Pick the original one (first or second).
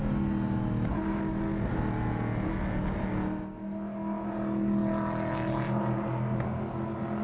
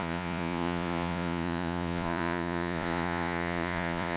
first